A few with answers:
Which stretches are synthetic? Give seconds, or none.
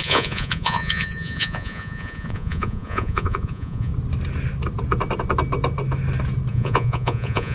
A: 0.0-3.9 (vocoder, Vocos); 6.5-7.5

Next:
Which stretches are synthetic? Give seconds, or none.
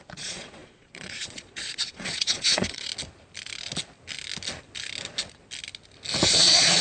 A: 0.0-2.9 (vocoder, Vocos); 6.3-6.8